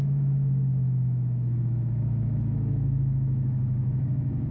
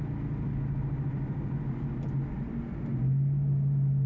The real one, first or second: second